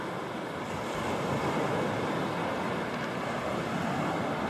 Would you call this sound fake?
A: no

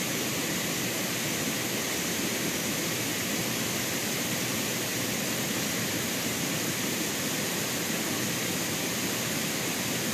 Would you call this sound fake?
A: no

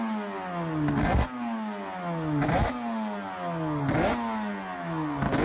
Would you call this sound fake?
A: no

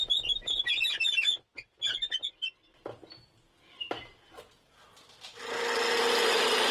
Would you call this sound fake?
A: no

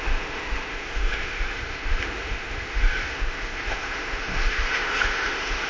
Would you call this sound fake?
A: yes